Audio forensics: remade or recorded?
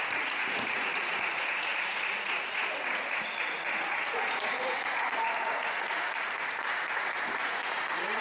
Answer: remade